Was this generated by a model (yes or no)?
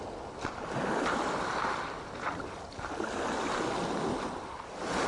no